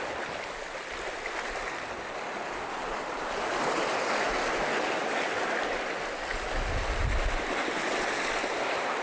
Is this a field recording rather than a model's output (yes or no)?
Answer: yes